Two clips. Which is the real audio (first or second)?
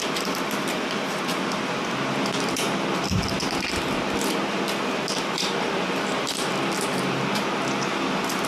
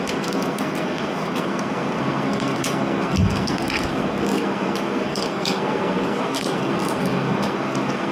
first